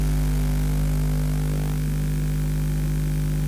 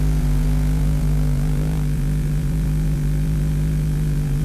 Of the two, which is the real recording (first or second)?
first